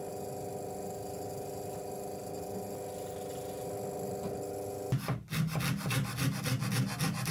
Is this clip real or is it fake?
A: real